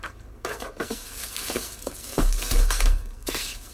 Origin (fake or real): fake